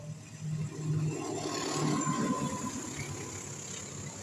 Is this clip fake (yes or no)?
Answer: no